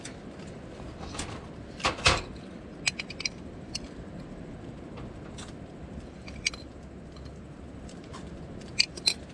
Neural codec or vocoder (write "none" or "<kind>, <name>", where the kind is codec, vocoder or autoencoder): none